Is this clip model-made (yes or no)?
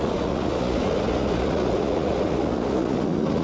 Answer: yes